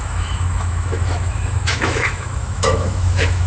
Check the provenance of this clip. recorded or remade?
remade